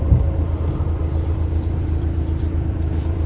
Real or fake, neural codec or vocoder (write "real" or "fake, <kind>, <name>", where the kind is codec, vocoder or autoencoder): fake, vocoder, BigVGAN v2